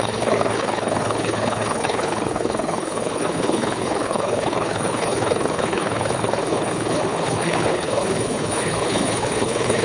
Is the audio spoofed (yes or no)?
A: yes